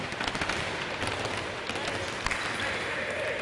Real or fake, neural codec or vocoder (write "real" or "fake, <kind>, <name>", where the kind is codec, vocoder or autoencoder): real